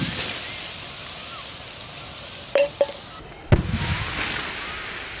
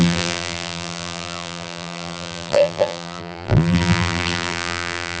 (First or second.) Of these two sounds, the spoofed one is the second